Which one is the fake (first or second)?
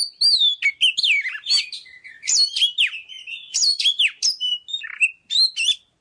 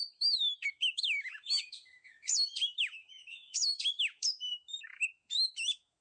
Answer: second